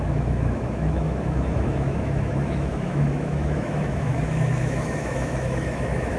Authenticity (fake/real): fake